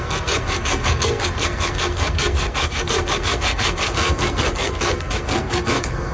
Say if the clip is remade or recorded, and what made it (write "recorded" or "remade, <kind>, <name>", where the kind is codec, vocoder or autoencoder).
remade, codec, SNAC